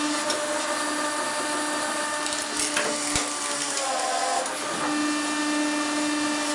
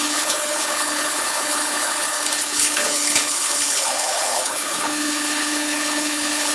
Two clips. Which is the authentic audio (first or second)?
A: first